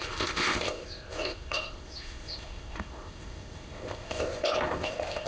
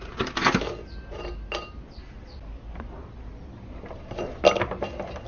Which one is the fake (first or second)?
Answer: first